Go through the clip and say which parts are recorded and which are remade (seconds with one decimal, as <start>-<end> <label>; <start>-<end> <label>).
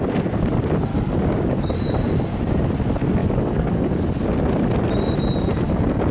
0.0-0.9 recorded; 0.9-1.8 remade; 1.8-3.2 recorded; 3.2-3.9 remade; 3.9-6.1 recorded